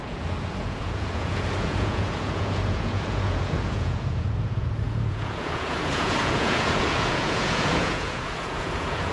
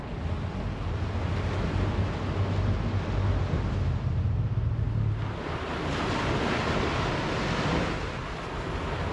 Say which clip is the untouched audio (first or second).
second